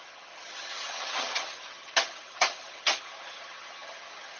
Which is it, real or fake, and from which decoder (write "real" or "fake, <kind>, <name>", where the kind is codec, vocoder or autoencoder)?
fake, vocoder, HiFi-GAN